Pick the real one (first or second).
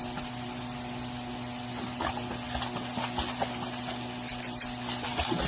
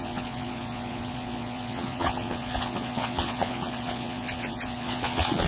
first